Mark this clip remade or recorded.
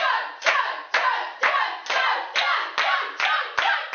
recorded